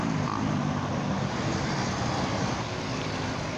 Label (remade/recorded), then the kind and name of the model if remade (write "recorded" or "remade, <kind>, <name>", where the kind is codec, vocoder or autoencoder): recorded